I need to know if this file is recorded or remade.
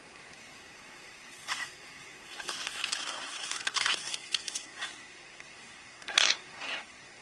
remade